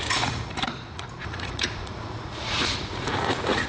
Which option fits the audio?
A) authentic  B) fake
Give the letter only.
B